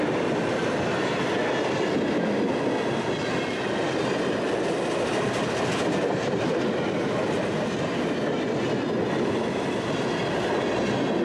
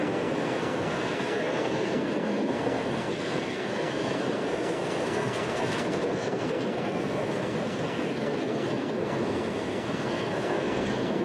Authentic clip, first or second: first